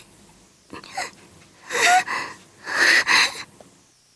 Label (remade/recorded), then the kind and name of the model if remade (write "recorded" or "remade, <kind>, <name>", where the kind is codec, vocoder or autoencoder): recorded